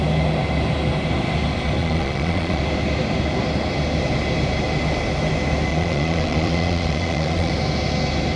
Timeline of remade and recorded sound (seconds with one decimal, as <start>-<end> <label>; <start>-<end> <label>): 0.0-1.8 recorded; 1.8-2.6 remade; 2.6-5.7 recorded; 5.7-7.5 remade; 7.5-8.4 recorded

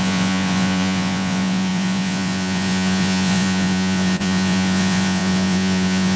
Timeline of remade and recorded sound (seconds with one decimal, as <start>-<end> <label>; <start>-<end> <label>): 0.0-6.2 remade

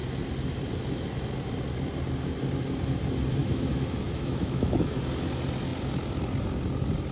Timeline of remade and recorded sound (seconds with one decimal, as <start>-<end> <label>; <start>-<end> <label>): 0.0-3.4 recorded; 3.4-5.0 remade; 5.0-7.1 recorded

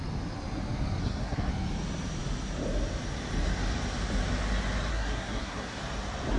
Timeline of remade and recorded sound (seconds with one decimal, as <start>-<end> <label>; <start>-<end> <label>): 0.0-1.0 recorded; 1.0-1.5 remade; 1.5-4.9 recorded; 4.9-5.8 remade; 5.8-6.4 recorded

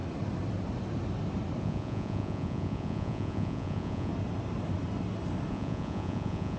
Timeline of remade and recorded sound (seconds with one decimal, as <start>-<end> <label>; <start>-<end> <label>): 0.0-1.6 recorded; 1.6-4.1 remade; 4.1-5.5 recorded; 5.5-6.6 remade

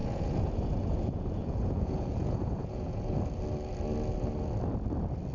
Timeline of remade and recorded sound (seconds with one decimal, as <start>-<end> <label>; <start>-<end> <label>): 0.0-3.2 remade; 3.2-5.3 recorded